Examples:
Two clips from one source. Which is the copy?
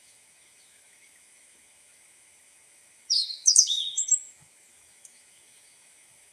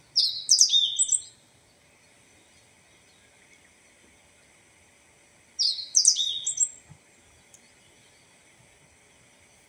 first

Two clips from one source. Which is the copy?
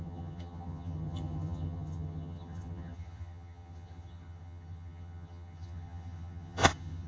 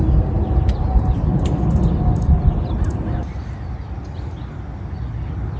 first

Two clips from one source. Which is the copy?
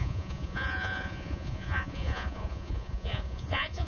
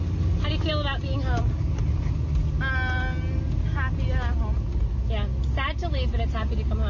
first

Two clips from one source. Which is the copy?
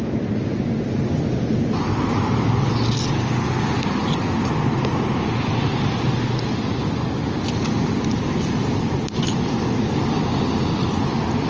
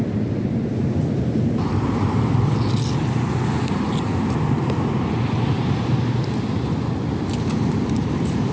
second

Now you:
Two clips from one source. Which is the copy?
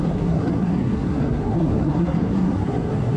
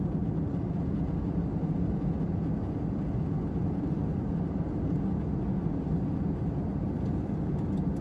first